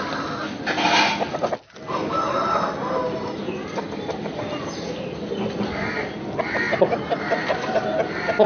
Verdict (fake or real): real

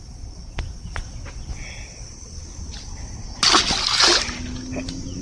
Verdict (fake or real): real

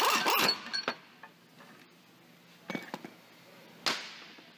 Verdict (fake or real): real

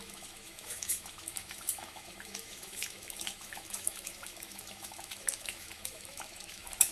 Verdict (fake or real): fake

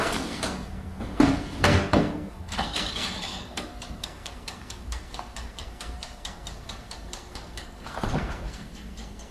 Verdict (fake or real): fake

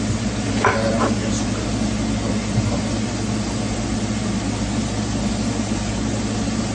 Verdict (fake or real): real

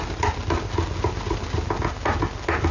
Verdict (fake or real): real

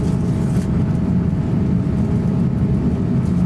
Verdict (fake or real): real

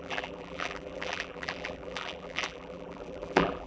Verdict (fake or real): fake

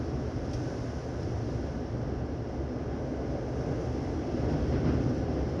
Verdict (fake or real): real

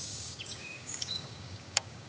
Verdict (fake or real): fake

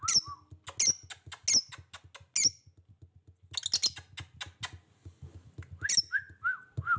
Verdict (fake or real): real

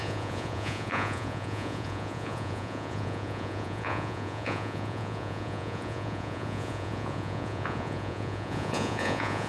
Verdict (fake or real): fake